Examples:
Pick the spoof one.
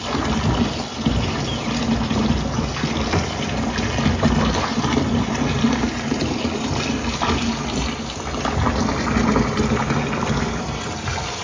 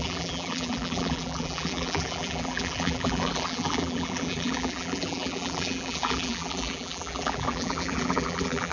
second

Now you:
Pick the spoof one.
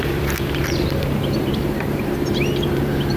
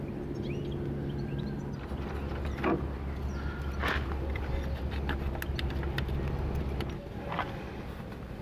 first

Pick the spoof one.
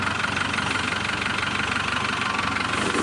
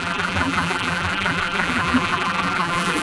second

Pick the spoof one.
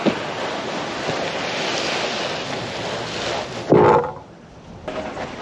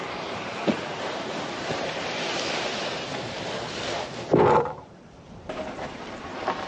second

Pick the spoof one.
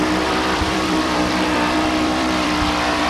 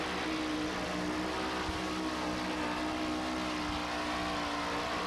first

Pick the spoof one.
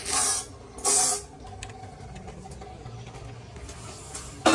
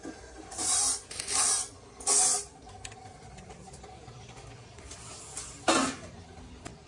second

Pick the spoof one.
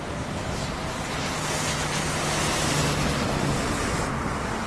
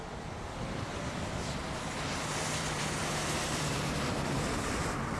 second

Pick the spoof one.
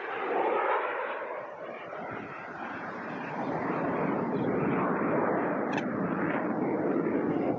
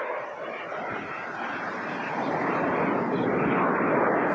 first